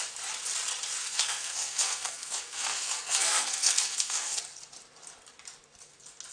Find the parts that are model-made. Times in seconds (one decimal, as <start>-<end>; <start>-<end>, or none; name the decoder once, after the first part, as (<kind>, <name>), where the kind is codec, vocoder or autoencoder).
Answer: 1.0-4.4 (codec, SNAC)